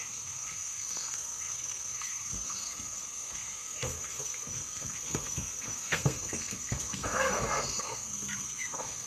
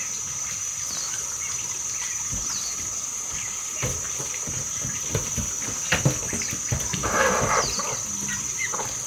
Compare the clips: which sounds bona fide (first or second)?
second